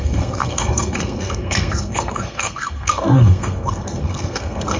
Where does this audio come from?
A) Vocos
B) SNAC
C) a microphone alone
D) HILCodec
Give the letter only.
B